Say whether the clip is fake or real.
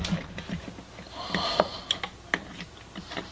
real